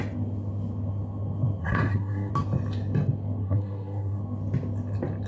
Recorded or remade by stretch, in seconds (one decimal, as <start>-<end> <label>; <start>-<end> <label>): 0.0-1.6 recorded; 1.6-2.3 remade; 2.3-3.4 recorded; 3.4-4.2 remade; 4.2-5.3 recorded